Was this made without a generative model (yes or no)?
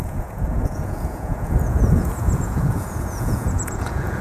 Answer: no